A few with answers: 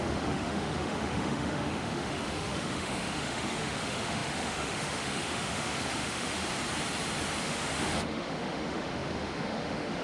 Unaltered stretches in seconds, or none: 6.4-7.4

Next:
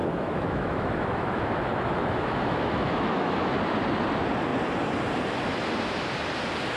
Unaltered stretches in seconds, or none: 3.5-6.8

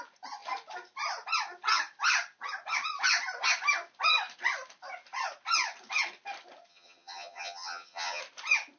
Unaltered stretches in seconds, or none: 0.0-6.7; 8.2-8.8